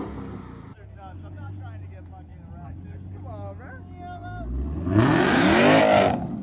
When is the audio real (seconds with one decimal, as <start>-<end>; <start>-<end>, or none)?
0.0-6.4